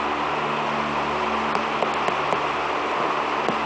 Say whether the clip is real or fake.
real